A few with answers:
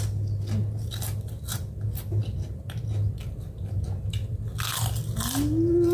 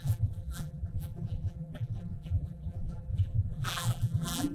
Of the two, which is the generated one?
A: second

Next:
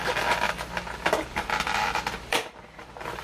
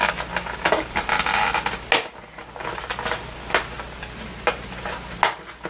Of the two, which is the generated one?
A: first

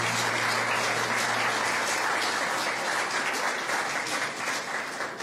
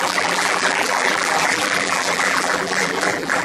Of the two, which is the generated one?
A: second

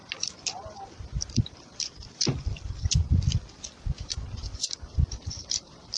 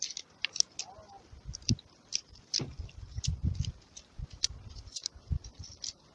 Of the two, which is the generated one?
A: first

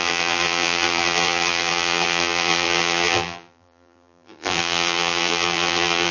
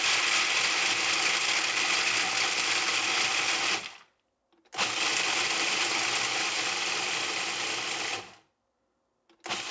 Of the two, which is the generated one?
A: first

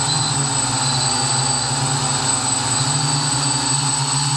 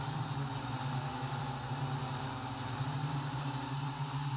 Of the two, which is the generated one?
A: second